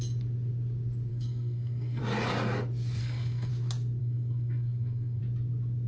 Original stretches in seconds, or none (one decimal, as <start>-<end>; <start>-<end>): 0.0-1.1; 2.0-3.0; 3.5-4.0; 5.2-5.9